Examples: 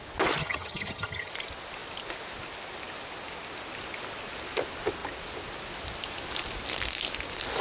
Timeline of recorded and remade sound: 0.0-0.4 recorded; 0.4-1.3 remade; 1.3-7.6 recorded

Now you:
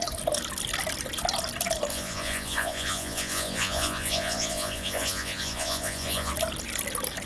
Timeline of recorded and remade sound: 0.0-1.9 recorded; 1.9-6.3 remade; 6.3-7.3 recorded